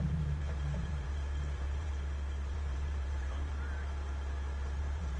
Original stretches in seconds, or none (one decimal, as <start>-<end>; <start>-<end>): 1.9-2.5; 3.5-4.8

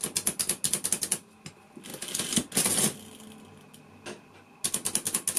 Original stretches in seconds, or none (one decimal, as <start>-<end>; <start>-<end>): 0.0-5.4